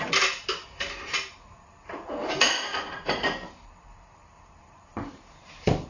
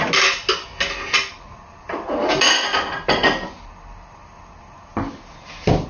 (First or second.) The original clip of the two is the second